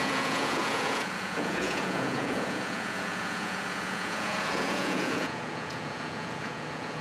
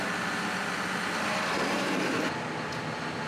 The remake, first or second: first